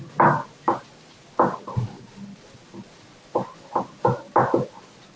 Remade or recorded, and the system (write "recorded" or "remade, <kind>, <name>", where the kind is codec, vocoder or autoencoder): recorded